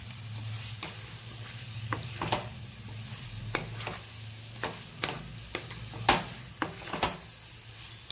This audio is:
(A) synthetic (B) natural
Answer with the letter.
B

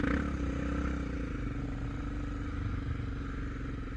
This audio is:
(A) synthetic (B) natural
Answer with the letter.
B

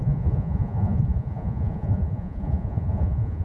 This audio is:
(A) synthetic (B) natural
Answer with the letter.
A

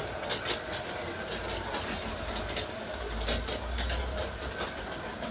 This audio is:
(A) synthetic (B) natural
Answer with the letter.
B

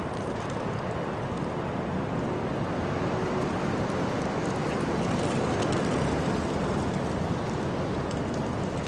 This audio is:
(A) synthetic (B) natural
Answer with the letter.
B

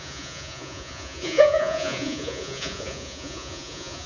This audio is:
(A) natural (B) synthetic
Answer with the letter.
B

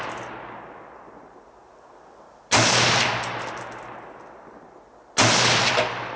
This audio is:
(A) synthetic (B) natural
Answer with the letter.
B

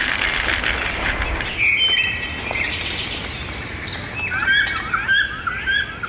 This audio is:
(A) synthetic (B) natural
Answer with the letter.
B